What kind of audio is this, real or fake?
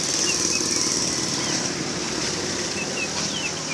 real